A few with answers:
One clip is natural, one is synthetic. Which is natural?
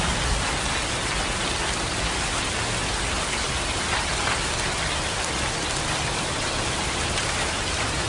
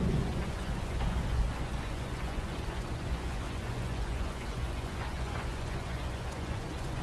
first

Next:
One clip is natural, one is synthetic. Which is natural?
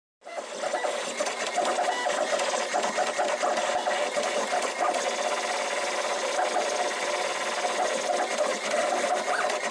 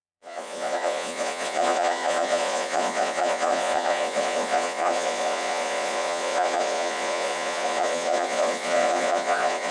first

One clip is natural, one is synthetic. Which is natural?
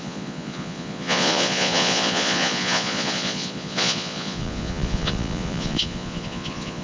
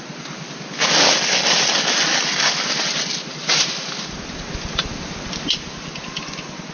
second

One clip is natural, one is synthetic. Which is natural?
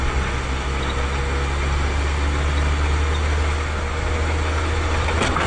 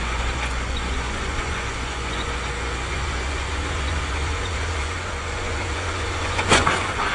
first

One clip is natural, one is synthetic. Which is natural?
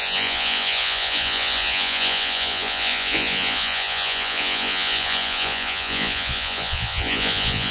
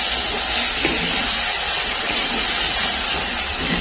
second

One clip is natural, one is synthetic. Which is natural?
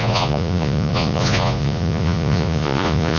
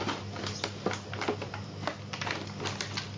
second